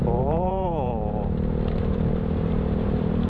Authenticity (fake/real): fake